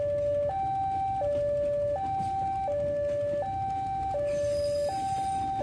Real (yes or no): yes